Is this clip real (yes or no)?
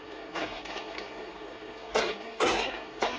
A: no